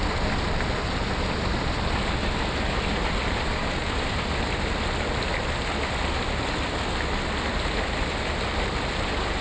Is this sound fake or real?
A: real